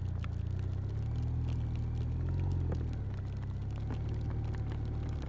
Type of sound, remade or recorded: recorded